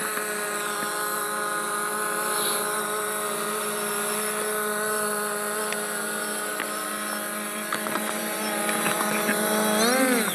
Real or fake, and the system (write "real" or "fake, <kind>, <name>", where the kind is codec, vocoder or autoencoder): real